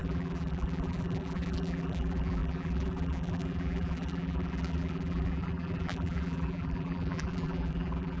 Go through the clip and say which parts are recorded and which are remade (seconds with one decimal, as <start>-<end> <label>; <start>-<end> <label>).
0.0-8.2 remade